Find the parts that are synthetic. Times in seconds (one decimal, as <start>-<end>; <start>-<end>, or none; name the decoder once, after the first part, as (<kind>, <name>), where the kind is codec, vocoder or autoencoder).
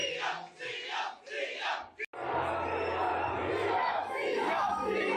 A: 3.8-5.2 (autoencoder, DAC-VAE)